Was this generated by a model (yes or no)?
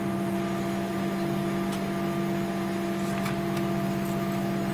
no